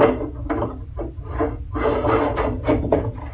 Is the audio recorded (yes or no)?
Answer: yes